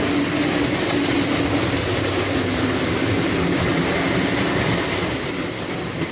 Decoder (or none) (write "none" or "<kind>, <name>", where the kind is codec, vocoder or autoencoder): none